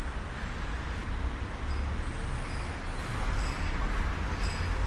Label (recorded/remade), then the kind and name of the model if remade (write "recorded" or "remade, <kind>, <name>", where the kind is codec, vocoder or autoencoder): recorded